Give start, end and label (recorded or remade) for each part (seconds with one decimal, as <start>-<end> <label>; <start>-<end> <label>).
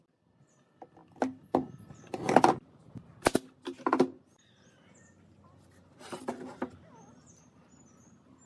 0.0-8.5 recorded